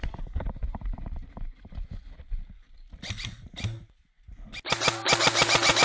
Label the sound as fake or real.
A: real